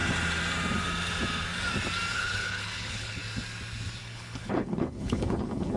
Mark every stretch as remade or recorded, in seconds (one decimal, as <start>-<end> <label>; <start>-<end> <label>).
0.0-2.1 recorded; 2.1-3.2 remade; 3.2-4.0 recorded; 4.0-5.8 remade